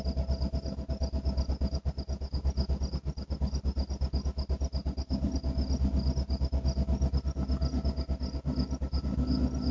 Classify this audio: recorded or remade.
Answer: recorded